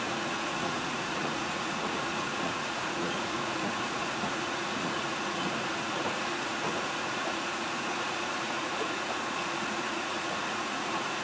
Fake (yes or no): yes